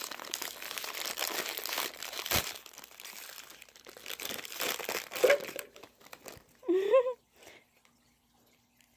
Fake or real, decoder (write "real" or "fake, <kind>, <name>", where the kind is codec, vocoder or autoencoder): fake, vocoder, BigVGAN v2